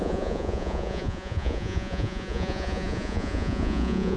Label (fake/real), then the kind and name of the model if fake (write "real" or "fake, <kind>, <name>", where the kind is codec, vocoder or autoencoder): fake, vocoder, Vocos